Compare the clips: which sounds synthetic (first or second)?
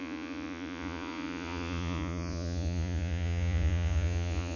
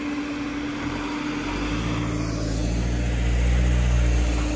first